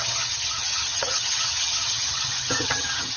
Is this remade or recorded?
remade